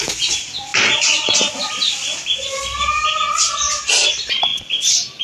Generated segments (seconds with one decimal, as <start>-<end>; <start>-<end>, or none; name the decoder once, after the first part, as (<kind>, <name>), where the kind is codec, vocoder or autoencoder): none